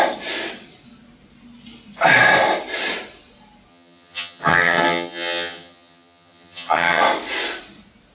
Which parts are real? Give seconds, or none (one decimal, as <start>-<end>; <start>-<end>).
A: 0.0-3.7; 7.0-8.1